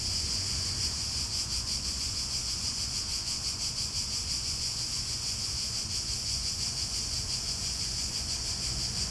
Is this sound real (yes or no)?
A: no